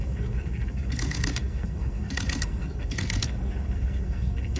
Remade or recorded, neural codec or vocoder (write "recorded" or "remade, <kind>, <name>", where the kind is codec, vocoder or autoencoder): remade, codec, SNAC